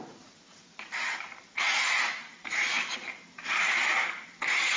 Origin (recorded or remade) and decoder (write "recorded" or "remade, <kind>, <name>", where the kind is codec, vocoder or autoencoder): remade, vocoder, BigVGAN v2